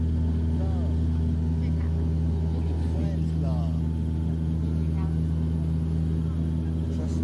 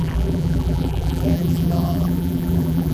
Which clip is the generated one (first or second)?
second